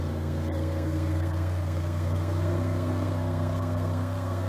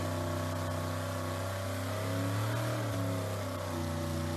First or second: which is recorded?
second